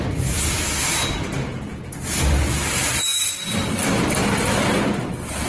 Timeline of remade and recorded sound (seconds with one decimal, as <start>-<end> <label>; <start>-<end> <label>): 0.0-1.4 recorded; 1.4-2.2 remade; 2.2-5.5 recorded